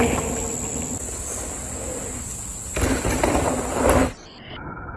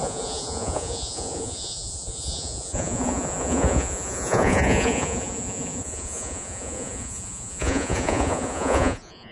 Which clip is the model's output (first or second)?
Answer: second